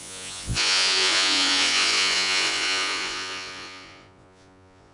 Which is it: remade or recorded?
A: remade